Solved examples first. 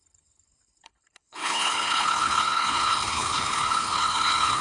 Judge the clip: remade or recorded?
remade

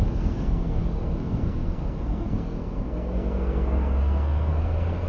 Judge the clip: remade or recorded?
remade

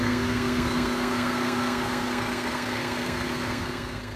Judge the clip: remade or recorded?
remade